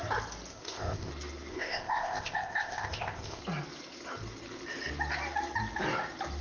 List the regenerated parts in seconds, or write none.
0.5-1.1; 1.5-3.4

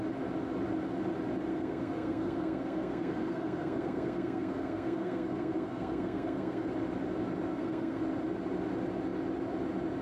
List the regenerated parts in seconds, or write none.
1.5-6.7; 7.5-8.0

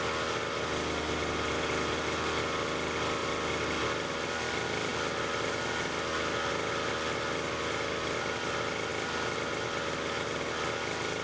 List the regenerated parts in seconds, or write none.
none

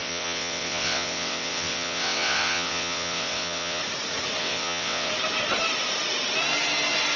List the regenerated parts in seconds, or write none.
0.0-3.8; 4.4-5.1